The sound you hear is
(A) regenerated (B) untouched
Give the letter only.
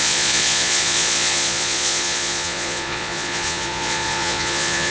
A